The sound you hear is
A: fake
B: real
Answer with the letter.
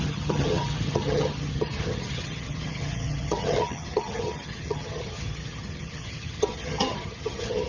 A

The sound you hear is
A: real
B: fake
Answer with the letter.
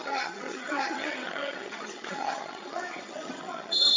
B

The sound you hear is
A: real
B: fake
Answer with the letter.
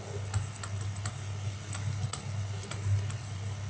A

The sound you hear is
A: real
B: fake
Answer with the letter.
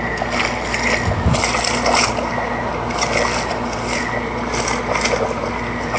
A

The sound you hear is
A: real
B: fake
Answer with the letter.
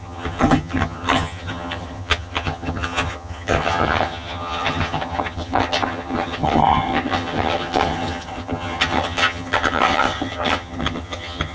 B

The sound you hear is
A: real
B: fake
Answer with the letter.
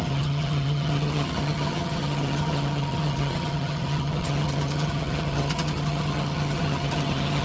B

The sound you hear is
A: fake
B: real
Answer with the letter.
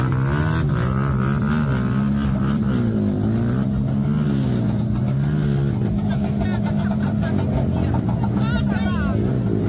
B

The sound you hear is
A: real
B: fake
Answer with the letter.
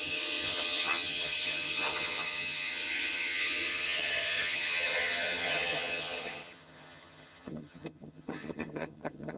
B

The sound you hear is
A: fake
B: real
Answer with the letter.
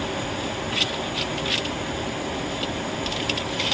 B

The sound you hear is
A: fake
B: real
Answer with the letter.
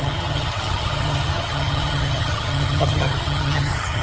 A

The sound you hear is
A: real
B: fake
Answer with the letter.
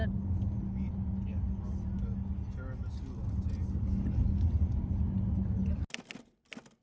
A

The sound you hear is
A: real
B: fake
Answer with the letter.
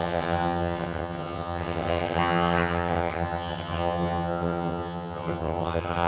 B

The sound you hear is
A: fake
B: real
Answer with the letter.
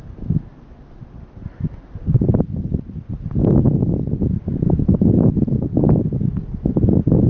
B